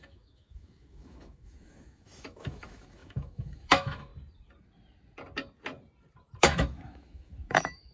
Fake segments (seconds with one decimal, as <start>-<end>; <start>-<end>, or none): 0.0-4.1; 6.4-7.9